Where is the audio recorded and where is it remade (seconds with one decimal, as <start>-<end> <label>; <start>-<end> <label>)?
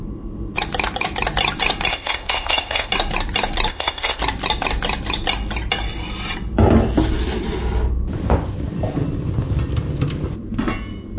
0.0-1.9 recorded; 1.9-2.9 remade; 2.9-3.7 recorded; 3.7-4.2 remade; 4.2-11.2 recorded